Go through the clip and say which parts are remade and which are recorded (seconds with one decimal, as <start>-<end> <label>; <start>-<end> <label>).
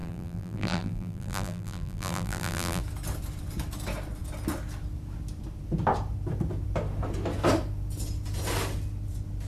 0.0-2.8 remade; 2.8-9.5 recorded